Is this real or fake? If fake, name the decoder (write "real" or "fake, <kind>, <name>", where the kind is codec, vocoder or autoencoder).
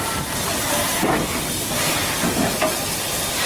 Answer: real